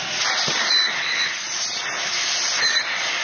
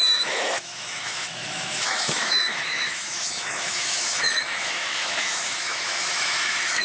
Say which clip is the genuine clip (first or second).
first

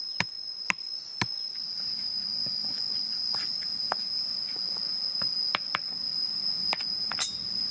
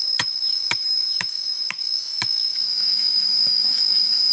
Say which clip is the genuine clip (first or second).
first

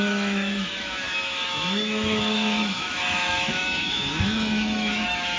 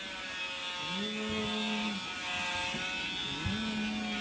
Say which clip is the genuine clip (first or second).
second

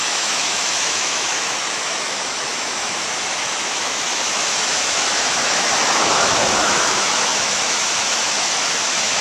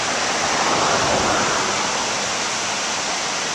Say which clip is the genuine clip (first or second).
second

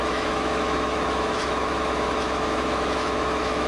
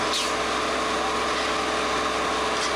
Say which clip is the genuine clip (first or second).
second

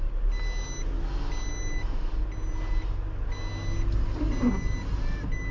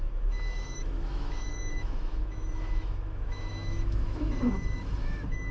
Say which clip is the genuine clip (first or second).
first